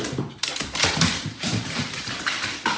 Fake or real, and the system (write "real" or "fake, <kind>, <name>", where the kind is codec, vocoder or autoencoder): fake, vocoder, BigVGAN v2